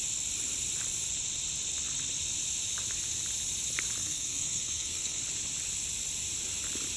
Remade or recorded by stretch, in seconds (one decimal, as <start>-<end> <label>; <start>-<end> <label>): 0.0-4.0 recorded; 4.0-5.2 remade; 5.2-7.0 recorded